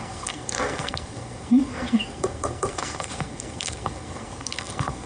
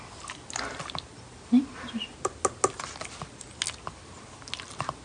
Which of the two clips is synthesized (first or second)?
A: first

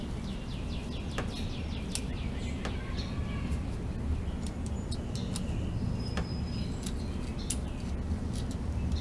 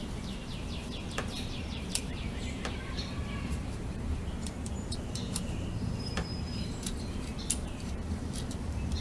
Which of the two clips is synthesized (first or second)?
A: second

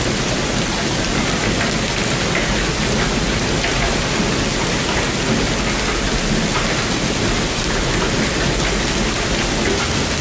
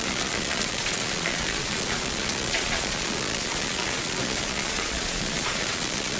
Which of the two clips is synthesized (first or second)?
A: second